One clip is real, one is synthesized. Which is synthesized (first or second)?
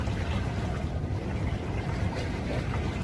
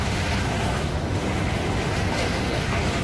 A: second